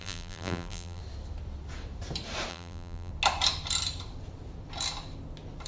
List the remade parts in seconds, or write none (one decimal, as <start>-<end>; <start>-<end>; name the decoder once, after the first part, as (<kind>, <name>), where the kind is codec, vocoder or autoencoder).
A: 0.0-1.0 (vocoder, BigVGAN v2); 2.5-3.1